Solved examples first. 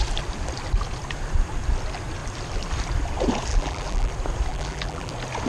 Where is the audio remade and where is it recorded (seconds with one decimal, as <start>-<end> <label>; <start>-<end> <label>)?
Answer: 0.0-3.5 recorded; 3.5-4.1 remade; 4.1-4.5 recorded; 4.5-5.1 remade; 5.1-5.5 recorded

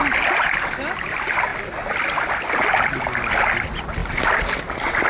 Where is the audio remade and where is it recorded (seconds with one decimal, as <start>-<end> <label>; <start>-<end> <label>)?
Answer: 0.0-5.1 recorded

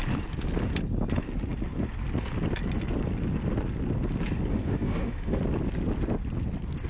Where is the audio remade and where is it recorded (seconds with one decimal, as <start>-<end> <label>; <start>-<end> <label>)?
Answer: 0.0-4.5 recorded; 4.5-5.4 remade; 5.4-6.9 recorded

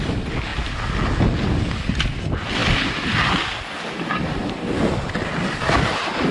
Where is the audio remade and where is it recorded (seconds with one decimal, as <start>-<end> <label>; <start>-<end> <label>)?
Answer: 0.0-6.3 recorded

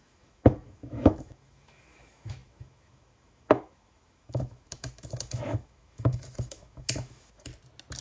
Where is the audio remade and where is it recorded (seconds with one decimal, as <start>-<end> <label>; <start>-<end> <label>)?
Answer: 0.0-7.5 remade; 7.5-8.0 recorded

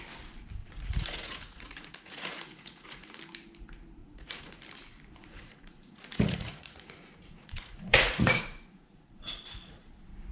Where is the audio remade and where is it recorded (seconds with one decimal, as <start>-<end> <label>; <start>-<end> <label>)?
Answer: 0.0-0.6 recorded; 0.6-3.2 remade; 3.2-4.0 recorded; 4.0-4.6 remade; 4.6-5.2 recorded; 5.2-9.9 remade; 9.9-10.3 recorded

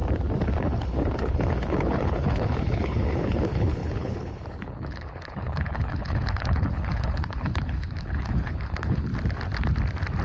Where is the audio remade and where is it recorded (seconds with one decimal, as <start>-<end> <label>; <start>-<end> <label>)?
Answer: 0.0-0.6 recorded; 0.6-9.1 remade; 9.1-10.2 recorded